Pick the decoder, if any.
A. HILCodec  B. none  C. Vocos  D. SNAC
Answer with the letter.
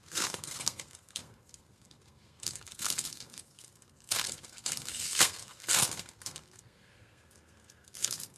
D